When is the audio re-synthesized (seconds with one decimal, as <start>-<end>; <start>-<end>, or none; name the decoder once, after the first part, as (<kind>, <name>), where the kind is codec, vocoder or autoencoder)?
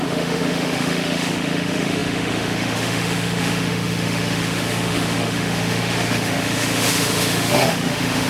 0.0-8.3 (autoencoder, DAC-VAE)